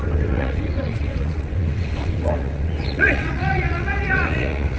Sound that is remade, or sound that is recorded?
remade